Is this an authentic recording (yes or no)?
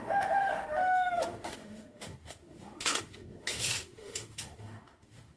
no